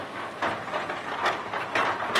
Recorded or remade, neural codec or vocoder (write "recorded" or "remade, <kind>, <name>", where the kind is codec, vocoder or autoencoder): recorded